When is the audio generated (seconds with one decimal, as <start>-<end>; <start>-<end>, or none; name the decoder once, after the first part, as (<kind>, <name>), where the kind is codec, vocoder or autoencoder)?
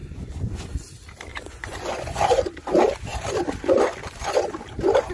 0.0-0.6 (vocoder, Vocos); 1.3-2.2